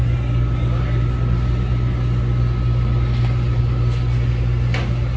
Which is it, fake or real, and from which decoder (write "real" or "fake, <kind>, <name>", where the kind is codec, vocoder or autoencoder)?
real